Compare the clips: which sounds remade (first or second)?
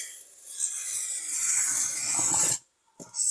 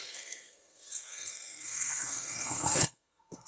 second